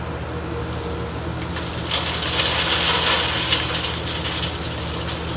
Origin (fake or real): real